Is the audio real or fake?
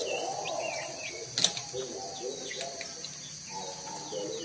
real